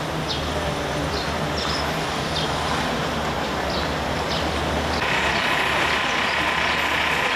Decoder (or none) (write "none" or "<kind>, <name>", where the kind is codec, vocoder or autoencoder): none